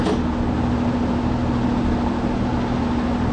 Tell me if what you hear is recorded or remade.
recorded